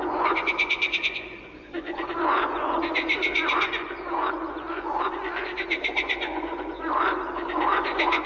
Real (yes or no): no